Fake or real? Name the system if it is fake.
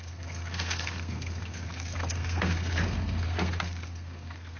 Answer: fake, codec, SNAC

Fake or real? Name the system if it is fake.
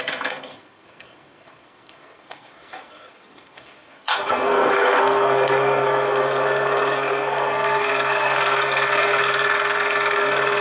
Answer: fake, codec, SNAC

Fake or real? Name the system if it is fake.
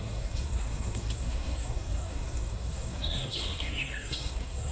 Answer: fake, codec, SNAC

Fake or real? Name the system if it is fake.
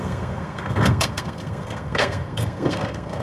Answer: fake, codec, SNAC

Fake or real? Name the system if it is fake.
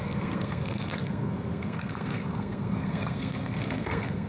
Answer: fake, codec, SNAC